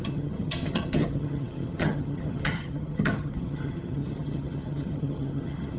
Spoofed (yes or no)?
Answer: yes